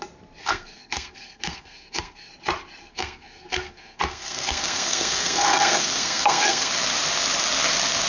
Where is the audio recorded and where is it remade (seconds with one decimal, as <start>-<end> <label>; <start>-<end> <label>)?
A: 0.0-0.4 recorded; 0.4-2.3 remade; 2.3-2.8 recorded; 2.8-6.7 remade; 6.7-8.1 recorded